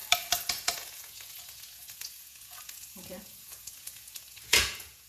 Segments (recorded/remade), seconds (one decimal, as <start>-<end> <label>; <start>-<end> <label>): 0.0-0.5 recorded; 0.5-5.1 remade